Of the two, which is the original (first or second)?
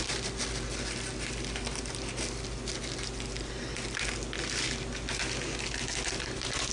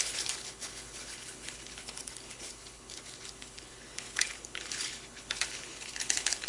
first